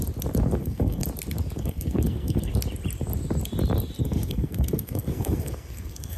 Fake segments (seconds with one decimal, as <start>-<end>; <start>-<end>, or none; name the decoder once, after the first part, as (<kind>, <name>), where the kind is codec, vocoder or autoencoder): 0.6-1.0 (codec, SNAC); 1.6-2.5; 4.0-6.2